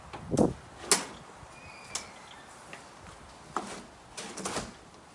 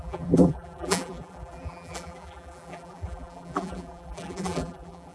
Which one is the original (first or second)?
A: first